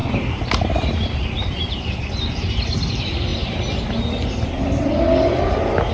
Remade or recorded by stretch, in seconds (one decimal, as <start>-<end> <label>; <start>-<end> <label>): 0.0-3.3 remade; 3.3-5.9 recorded